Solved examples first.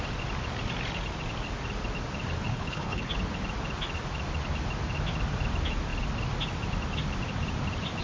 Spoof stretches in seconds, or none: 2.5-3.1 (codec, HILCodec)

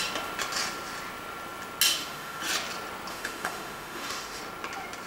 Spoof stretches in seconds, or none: 1.9-2.4 (autoencoder, DAC-VAE); 3.1-4.4